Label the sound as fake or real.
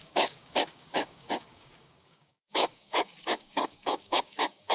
fake